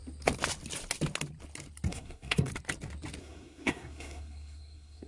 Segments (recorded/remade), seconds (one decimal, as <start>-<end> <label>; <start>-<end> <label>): 0.0-1.9 recorded; 1.9-2.5 remade; 2.5-3.2 recorded; 3.2-5.1 remade